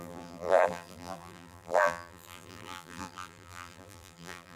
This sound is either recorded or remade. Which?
remade